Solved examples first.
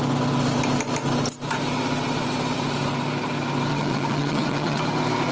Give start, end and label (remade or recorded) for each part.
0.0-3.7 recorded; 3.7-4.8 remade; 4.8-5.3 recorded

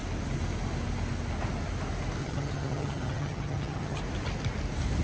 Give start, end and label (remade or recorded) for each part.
0.0-2.2 recorded; 2.2-4.0 remade; 4.0-5.0 recorded

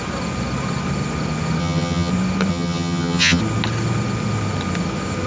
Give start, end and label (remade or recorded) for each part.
0.0-1.6 recorded; 1.6-2.1 remade; 2.1-2.5 recorded; 2.5-3.4 remade; 3.4-5.3 recorded

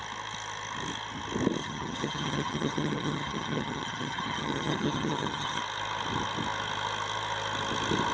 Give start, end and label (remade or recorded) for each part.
0.0-1.6 recorded; 1.6-5.6 remade; 5.6-8.1 recorded

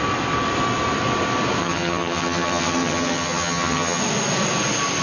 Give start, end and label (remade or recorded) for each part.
0.0-1.6 recorded; 1.6-4.0 remade; 4.0-5.0 recorded

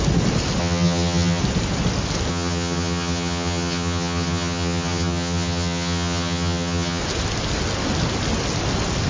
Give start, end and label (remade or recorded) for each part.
0.0-0.6 recorded; 0.6-1.4 remade; 1.4-2.3 recorded; 2.3-7.0 remade; 7.0-9.1 recorded

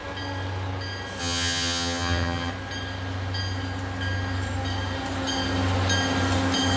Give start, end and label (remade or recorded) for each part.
0.0-1.2 recorded; 1.2-2.5 remade; 2.5-6.8 recorded

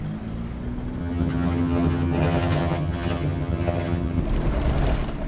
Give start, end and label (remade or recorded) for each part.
0.0-1.0 recorded; 1.0-4.2 remade; 4.2-5.3 recorded